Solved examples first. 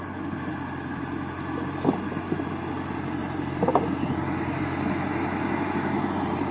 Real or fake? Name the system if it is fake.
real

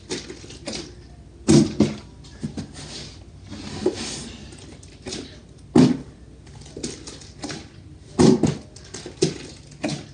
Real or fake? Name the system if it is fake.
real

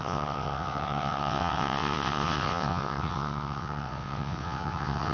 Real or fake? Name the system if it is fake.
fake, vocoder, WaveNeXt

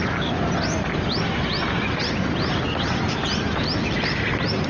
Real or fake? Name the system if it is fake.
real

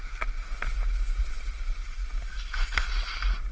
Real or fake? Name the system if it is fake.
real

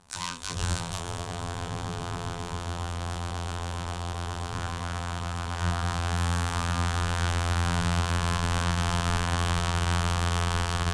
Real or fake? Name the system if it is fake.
fake, vocoder, BigVGAN v2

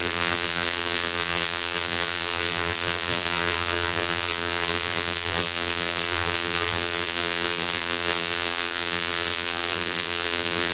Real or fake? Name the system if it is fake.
fake, vocoder, BigVGAN v2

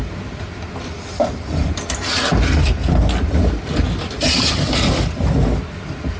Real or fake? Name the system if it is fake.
real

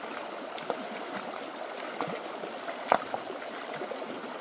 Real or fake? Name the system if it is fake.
real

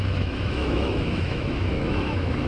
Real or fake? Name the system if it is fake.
fake, autoencoder, DAC-VAE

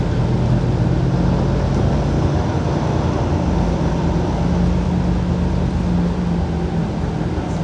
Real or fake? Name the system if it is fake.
real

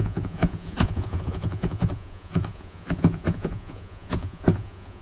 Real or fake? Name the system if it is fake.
fake, vocoder, Vocos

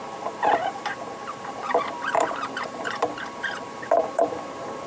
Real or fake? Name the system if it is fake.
fake, vocoder, BigVGAN v2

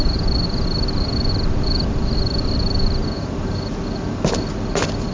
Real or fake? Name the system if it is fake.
real